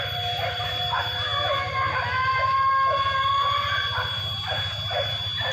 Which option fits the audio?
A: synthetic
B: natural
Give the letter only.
B